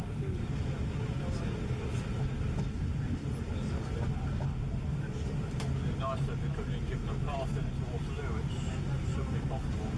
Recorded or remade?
recorded